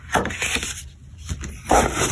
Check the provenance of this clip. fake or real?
real